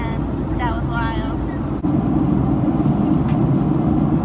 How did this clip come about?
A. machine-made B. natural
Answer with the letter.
B